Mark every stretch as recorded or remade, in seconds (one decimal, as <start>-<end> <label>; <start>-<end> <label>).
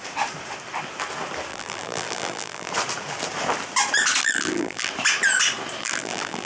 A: 0.0-1.5 recorded; 1.5-2.7 remade; 2.7-4.2 recorded; 4.2-4.9 remade; 4.9-5.8 recorded; 5.8-6.5 remade